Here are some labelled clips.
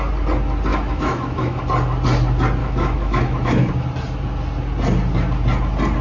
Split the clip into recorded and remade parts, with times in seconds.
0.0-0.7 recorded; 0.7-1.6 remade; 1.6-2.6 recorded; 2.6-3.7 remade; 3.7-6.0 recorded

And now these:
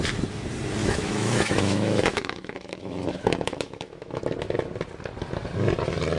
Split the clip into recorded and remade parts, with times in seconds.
0.0-0.8 recorded; 0.8-4.2 remade; 4.2-6.2 recorded